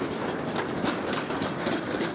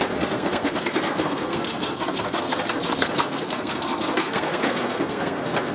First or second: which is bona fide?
first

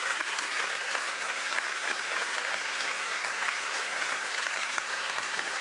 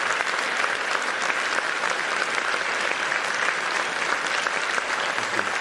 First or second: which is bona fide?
second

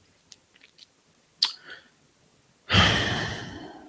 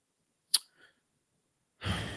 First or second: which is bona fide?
first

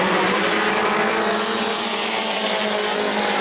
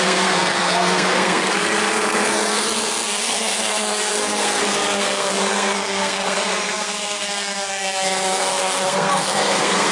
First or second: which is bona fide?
first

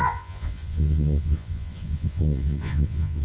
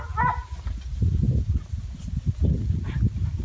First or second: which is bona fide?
second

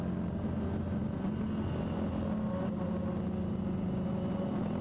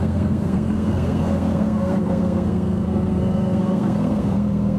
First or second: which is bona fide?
first